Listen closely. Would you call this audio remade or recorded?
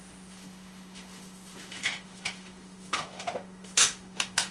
remade